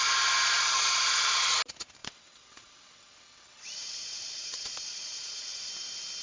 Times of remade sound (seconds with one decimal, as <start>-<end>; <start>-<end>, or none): 2.0-5.7